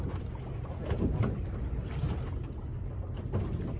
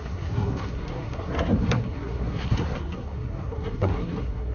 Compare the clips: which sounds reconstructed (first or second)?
second